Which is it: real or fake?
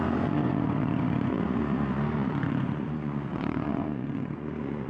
fake